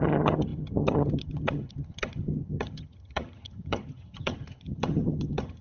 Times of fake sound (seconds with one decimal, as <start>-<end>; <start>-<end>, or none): 0.0-5.6